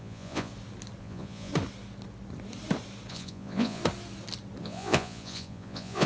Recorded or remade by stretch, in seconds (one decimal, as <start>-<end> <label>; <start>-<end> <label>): 0.0-0.5 remade; 0.5-1.0 recorded; 1.0-1.5 remade; 1.5-3.1 recorded; 3.1-3.8 remade; 3.8-4.6 recorded; 4.6-6.1 remade